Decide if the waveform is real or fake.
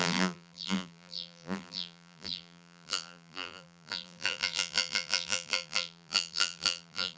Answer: fake